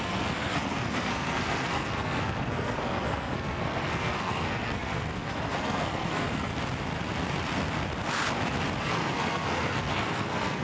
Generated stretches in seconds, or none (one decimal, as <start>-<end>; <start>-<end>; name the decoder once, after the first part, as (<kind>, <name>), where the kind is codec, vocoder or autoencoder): 0.0-6.5 (codec, SNAC); 8.8-10.6